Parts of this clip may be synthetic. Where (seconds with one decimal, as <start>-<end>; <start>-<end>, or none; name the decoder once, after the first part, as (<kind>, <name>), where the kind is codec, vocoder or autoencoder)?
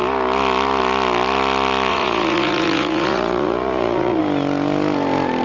1.9-4.2 (vocoder, Vocos)